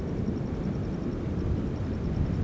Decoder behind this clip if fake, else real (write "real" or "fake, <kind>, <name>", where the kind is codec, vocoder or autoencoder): real